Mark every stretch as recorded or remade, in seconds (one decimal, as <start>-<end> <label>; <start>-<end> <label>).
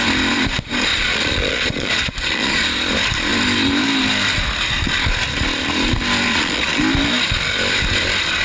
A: 0.0-0.9 recorded; 0.9-2.6 remade; 2.6-6.3 recorded; 6.3-6.8 remade; 6.8-8.4 recorded